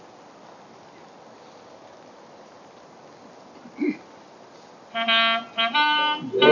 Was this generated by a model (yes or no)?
no